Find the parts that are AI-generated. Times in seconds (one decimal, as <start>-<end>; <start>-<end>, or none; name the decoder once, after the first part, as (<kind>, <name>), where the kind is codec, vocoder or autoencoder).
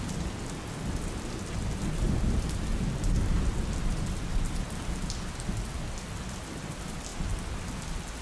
none